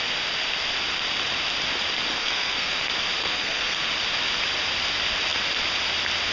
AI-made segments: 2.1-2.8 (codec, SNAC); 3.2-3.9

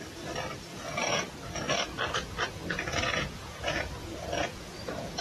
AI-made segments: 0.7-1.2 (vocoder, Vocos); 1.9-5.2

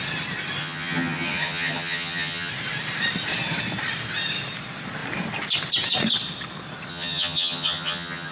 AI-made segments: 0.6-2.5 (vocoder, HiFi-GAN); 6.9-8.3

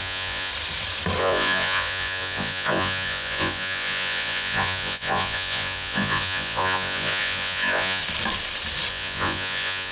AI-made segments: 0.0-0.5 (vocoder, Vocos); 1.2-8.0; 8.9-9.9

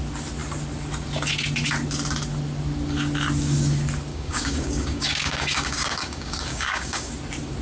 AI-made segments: 4.1-7.1 (codec, DAC)